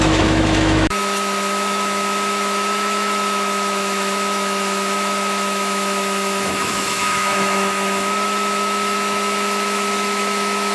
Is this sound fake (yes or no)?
yes